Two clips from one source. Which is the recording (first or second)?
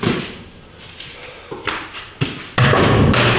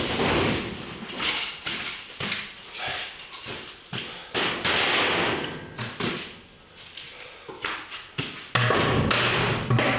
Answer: second